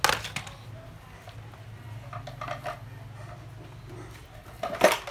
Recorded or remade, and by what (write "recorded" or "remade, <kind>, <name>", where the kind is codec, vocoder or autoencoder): recorded